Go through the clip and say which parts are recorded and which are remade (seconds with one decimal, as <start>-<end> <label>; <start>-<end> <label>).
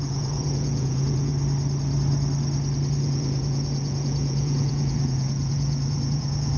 0.0-1.3 remade; 1.3-3.0 recorded; 3.0-6.6 remade